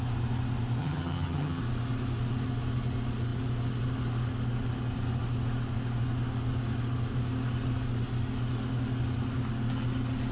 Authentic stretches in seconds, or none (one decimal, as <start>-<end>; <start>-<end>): 0.0-0.8; 1.6-10.3